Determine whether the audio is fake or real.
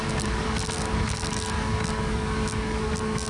fake